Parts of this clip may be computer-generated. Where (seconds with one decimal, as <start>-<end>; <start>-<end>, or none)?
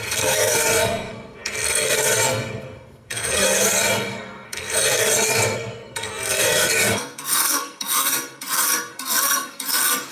0.0-10.1